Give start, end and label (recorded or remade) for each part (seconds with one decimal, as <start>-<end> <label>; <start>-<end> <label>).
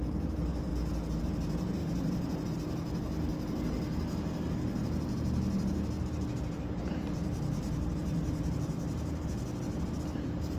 0.0-0.7 remade; 0.7-1.2 recorded; 1.2-1.8 remade; 1.8-2.5 recorded; 2.5-3.3 remade; 3.3-6.0 recorded; 6.0-10.6 remade